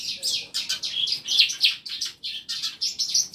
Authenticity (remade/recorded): recorded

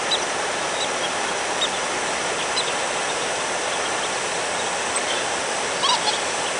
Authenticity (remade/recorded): recorded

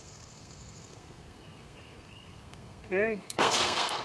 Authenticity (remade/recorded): remade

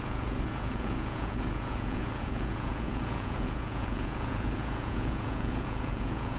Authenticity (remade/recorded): remade